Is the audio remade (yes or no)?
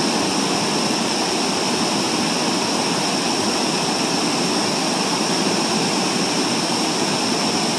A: no